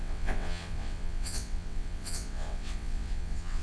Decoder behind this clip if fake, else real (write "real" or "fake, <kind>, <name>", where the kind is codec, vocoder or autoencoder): fake, vocoder, WaveNeXt